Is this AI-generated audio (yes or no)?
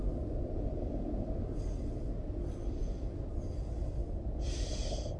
no